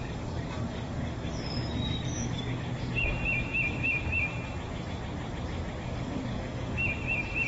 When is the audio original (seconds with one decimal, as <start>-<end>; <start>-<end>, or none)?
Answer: 2.7-5.8; 6.8-7.5